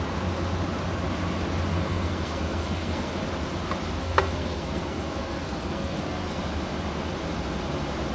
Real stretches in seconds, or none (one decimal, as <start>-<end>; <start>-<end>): 0.0-1.7; 3.1-4.0; 6.4-8.1